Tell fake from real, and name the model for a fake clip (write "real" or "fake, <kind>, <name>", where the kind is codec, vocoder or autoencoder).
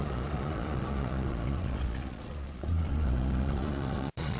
fake, vocoder, Vocos